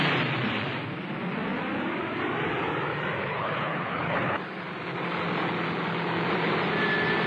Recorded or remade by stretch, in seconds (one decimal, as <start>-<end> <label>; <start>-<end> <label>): 0.0-3.2 recorded; 3.2-4.4 remade; 4.4-7.3 recorded